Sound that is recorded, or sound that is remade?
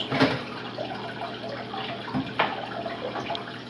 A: recorded